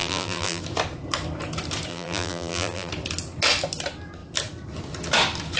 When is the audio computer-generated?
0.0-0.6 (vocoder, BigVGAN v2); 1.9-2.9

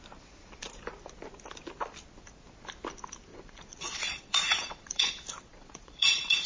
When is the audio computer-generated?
3.3-5.1 (vocoder, Vocos); 5.5-6.5